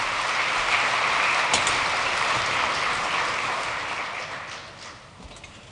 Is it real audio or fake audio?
real